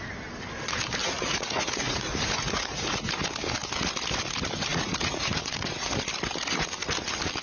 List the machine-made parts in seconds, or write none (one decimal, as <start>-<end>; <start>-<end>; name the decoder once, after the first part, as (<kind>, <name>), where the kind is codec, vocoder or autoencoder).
1.0-3.1 (vocoder, Vocos); 4.7-5.9